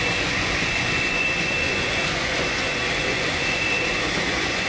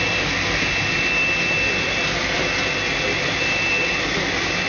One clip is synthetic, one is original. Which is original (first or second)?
second